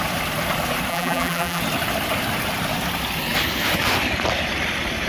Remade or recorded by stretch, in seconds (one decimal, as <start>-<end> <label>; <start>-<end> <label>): 0.0-0.9 recorded; 0.9-1.6 remade; 1.6-5.1 recorded